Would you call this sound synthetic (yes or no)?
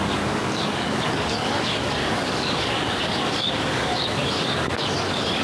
yes